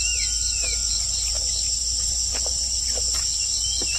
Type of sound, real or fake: real